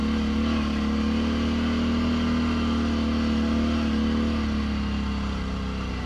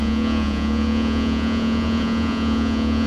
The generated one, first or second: second